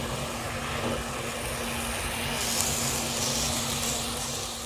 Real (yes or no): yes